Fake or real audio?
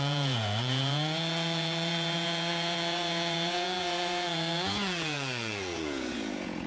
fake